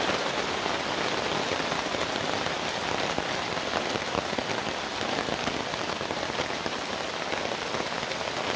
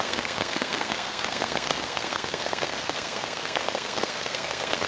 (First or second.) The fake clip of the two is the second